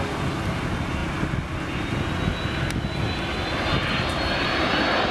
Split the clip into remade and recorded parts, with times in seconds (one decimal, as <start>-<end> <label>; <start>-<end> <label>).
0.0-5.1 recorded